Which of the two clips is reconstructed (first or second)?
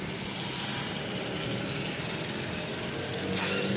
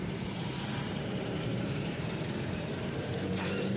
second